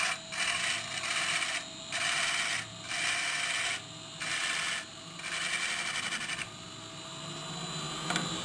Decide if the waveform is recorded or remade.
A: recorded